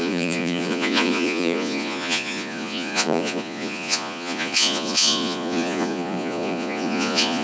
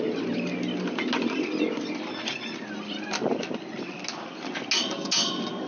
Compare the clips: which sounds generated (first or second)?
first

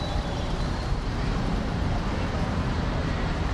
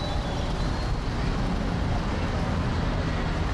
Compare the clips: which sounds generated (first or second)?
first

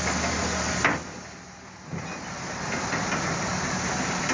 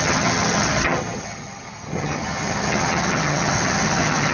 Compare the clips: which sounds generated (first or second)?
second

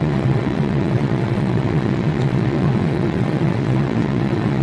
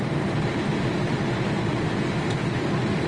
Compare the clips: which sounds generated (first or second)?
first